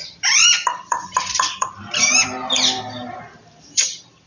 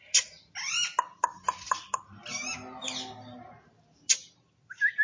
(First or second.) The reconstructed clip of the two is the first